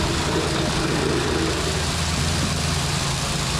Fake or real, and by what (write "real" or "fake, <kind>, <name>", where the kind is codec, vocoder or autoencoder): fake, vocoder, BigVGAN v2